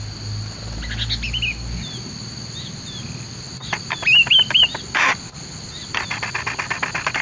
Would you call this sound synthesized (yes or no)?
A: no